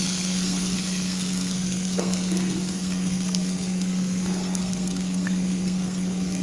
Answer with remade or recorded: remade